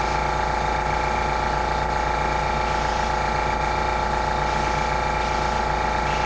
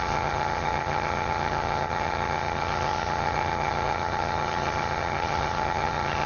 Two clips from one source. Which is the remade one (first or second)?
second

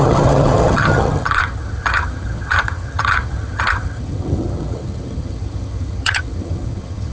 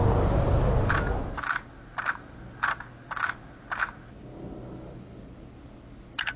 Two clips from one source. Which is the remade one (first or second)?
first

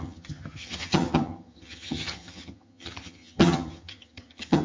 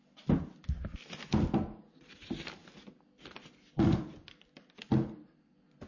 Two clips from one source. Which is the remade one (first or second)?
first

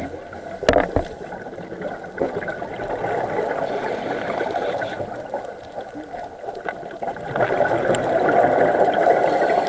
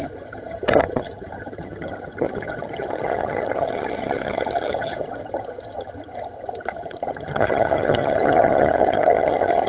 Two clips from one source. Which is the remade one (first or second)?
second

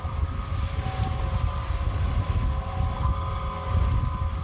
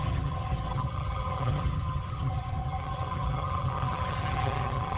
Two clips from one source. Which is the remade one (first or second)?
second